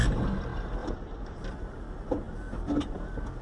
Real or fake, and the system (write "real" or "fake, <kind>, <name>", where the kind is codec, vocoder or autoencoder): real